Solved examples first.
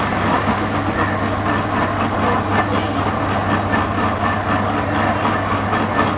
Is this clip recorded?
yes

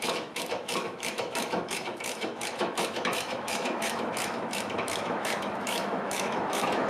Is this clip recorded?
no